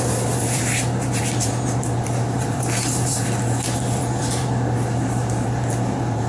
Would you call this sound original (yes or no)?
no